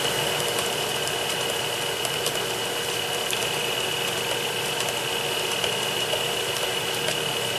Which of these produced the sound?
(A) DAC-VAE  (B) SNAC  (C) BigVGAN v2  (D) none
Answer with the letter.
D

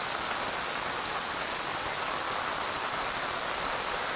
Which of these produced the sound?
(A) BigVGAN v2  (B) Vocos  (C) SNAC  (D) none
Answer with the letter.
D